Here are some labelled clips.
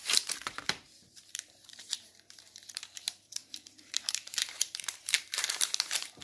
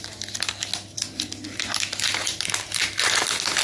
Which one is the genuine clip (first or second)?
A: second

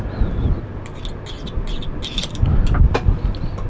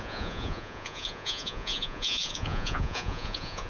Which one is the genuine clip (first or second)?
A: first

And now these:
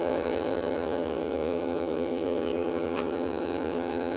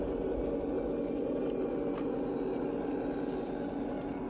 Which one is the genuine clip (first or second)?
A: second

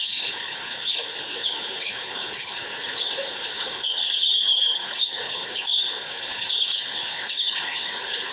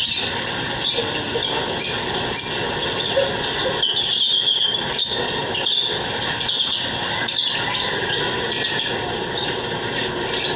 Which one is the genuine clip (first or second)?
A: second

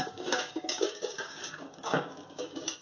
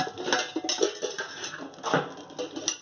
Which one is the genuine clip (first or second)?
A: second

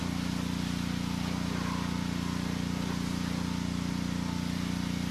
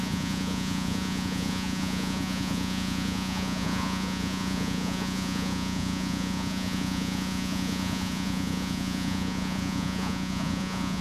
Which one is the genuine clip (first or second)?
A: first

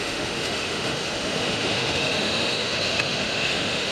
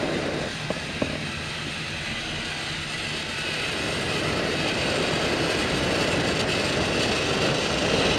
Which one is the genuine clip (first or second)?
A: second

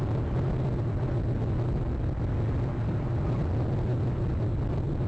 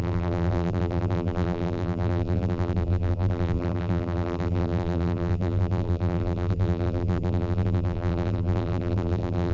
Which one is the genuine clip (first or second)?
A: first